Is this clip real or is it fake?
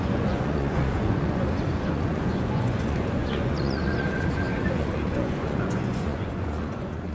fake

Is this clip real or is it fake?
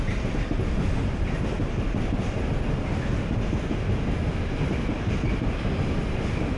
real